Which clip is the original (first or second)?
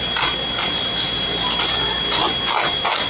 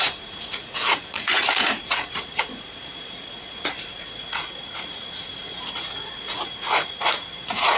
first